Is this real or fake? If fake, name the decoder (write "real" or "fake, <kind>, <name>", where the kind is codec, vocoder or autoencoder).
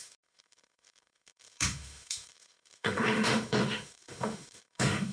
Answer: fake, autoencoder, DAC-VAE